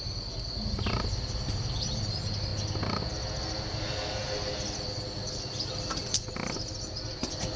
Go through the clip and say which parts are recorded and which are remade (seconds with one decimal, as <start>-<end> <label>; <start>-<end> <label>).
0.0-7.6 recorded

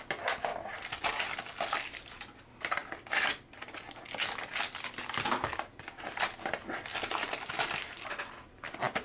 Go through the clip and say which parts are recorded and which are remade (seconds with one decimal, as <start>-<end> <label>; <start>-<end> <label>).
0.0-0.5 recorded; 0.5-1.2 remade; 1.2-9.0 recorded

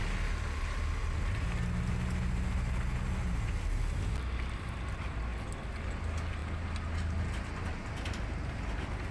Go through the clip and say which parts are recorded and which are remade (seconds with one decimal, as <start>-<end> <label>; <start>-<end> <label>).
0.0-9.1 recorded

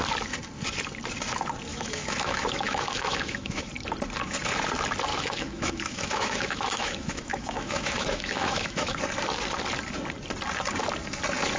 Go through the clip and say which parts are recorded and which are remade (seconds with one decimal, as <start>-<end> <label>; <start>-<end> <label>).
0.0-1.7 recorded; 1.7-3.7 remade; 3.7-5.1 recorded; 5.1-9.0 remade; 9.0-11.6 recorded

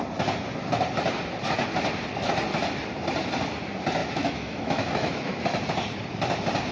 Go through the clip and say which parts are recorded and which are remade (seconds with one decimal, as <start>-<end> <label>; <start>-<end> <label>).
0.0-4.0 recorded; 4.0-5.4 remade; 5.4-6.7 recorded

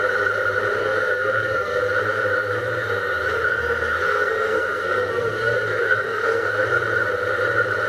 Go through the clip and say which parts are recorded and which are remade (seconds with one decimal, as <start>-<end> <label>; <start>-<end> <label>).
0.0-0.8 recorded; 0.8-1.8 remade; 1.8-4.0 recorded; 4.0-6.5 remade; 6.5-7.9 recorded